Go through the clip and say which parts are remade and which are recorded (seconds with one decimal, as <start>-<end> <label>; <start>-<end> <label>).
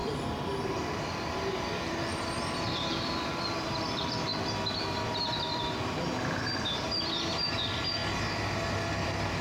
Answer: 0.0-4.3 remade; 4.3-4.9 recorded; 4.9-8.0 remade; 8.0-8.7 recorded; 8.7-9.4 remade